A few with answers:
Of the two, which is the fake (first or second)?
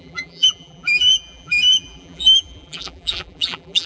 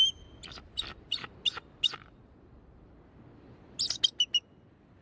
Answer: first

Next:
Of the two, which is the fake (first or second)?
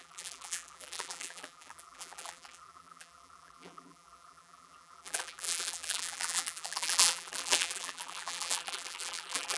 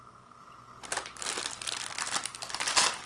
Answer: first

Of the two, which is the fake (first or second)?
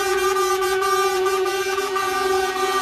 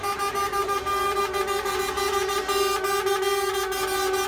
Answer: first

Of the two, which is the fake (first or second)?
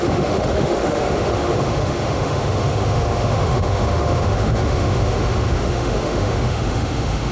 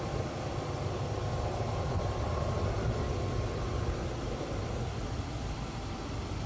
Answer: first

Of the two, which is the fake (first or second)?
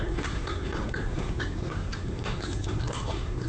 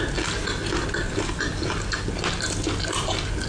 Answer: first